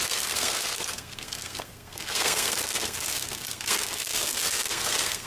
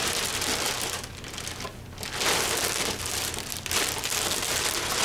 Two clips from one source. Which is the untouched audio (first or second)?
second